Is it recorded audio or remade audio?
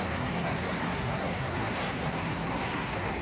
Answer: remade